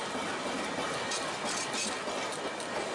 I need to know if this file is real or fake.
real